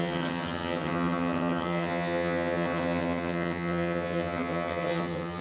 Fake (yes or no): yes